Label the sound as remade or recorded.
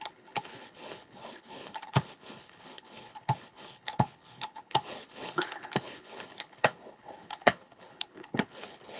remade